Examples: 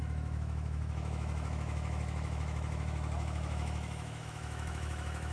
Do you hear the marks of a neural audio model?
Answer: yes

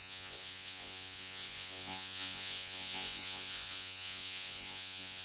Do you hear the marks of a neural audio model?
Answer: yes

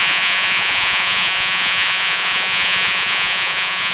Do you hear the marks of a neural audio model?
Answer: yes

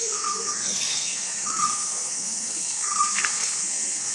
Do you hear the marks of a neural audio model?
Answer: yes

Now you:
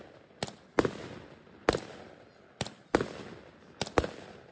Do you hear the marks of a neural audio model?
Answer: no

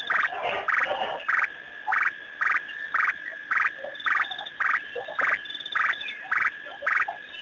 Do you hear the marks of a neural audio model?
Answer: no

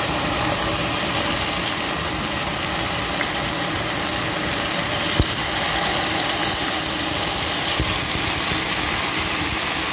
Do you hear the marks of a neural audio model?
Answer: no